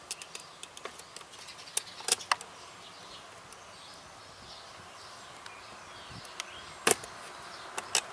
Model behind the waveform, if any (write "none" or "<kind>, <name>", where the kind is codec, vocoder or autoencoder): none